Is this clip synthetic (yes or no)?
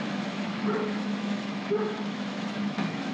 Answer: yes